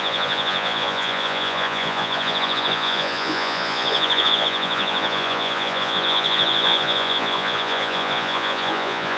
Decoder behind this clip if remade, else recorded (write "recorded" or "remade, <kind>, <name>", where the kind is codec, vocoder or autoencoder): remade, vocoder, Vocos